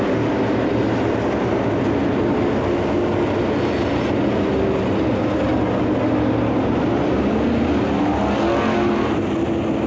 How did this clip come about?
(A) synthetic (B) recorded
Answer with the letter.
B